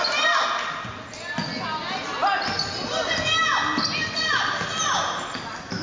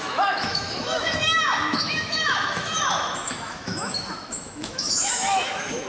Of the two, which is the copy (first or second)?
second